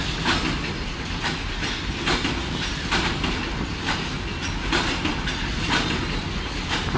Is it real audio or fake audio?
real